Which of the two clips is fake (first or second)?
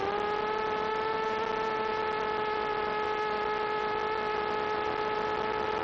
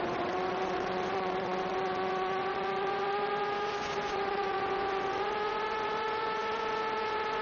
second